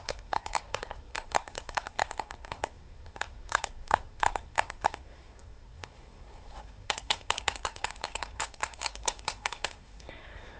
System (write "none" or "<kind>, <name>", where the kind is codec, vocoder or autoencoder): codec, SNAC